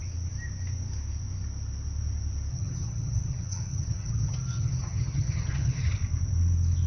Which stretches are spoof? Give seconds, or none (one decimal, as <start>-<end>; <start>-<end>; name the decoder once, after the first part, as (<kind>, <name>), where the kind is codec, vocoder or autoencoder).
2.5-5.9 (vocoder, HiFi-GAN)